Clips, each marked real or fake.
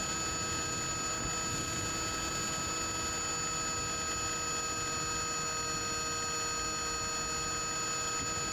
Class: real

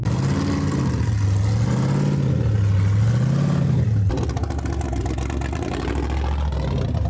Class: real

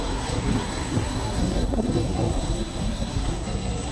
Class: fake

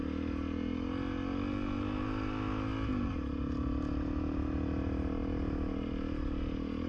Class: real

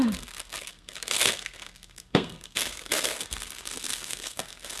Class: fake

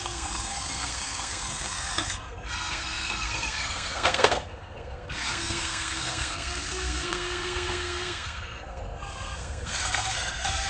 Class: fake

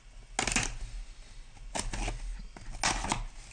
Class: real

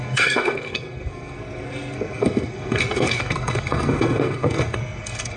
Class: fake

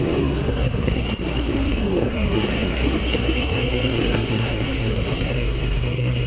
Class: fake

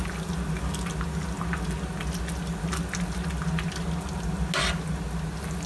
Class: real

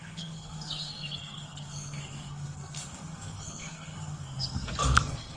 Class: fake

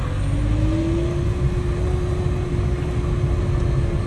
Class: real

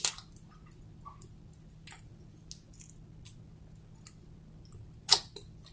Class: real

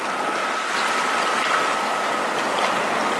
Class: real